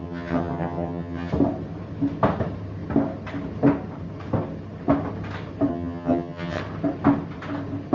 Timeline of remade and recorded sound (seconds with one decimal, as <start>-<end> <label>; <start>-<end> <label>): 0.0-1.3 remade; 1.3-5.7 recorded; 5.7-6.6 remade; 6.6-7.9 recorded